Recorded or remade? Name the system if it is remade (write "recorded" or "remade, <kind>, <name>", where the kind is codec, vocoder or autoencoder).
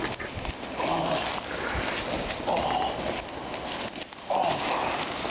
recorded